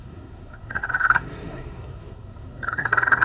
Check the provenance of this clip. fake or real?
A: fake